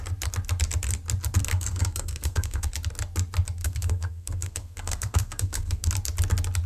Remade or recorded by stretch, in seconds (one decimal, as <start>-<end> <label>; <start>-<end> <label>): 0.0-1.5 recorded; 1.5-2.7 remade; 2.7-3.6 recorded; 3.6-5.9 remade; 5.9-6.7 recorded